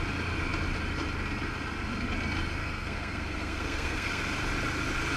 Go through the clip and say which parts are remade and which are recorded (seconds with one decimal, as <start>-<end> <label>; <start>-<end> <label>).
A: 0.0-2.6 recorded; 2.6-4.2 remade; 4.2-5.2 recorded